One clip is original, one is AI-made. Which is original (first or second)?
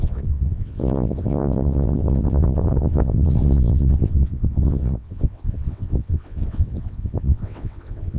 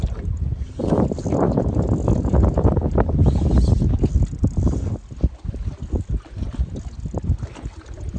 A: second